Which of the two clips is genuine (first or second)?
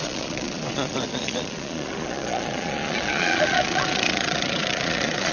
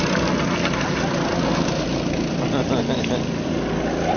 second